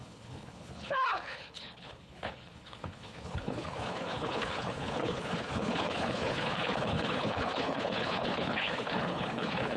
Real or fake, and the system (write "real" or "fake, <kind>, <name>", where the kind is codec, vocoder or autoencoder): fake, codec, HILCodec